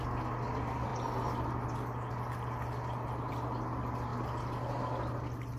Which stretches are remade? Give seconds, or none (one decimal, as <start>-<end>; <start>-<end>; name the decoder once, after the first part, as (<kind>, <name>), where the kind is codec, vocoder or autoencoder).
none